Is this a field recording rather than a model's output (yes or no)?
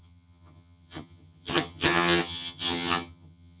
no